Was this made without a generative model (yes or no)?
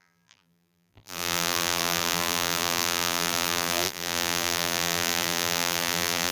no